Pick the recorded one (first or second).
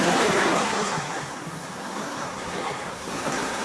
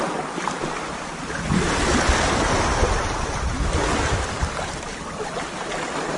second